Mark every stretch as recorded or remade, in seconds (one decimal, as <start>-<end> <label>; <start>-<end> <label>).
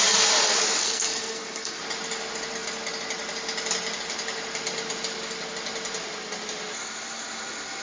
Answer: 0.0-0.8 recorded; 0.8-1.8 remade; 1.8-7.8 recorded